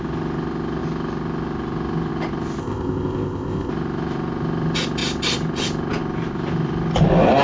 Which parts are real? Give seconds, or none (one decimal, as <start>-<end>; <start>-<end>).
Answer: 0.0-2.6; 3.7-7.4